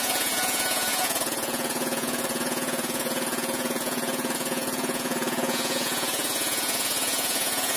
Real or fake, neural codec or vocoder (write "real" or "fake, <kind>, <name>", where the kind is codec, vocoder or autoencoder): fake, vocoder, Vocos